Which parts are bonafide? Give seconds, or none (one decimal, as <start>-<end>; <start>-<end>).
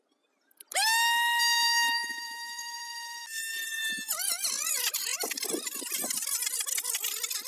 0.0-1.4; 3.9-5.1; 5.9-7.5